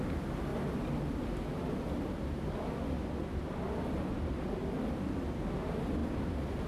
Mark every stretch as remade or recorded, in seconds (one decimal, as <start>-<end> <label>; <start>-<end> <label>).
0.0-6.7 recorded